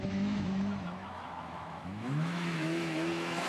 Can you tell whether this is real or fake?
fake